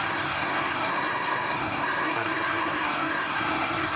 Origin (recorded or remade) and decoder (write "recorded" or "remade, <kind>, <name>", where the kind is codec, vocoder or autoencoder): remade, codec, SNAC